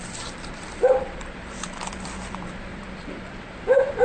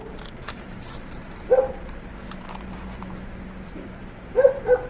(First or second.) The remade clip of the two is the first